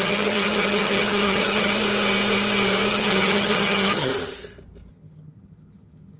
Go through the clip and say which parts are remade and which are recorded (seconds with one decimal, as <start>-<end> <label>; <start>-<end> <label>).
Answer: 0.0-1.7 remade; 1.7-2.9 recorded; 2.9-4.1 remade; 4.1-4.9 recorded; 4.9-6.2 remade